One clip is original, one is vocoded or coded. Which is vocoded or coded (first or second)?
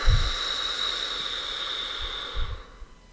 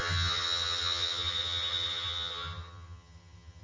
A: second